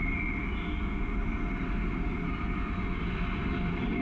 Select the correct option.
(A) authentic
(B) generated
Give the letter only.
A